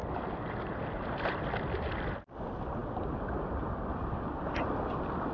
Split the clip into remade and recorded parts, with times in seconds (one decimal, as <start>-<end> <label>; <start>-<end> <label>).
0.0-5.3 recorded